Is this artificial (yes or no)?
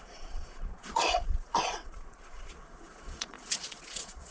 yes